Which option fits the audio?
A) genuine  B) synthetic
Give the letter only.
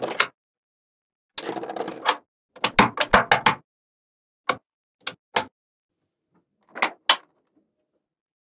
A